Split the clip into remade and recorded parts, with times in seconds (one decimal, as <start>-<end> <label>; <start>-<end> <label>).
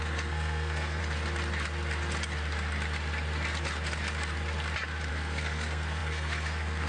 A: 0.0-1.0 remade; 1.0-5.1 recorded; 5.1-6.9 remade